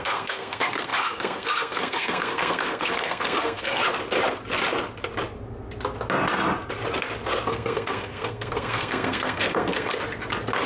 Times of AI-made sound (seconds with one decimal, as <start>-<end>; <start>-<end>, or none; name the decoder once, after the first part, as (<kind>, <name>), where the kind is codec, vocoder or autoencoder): 0.0-3.8 (codec, SNAC); 7.5-9.9